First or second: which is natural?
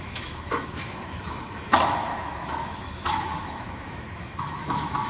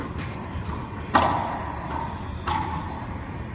second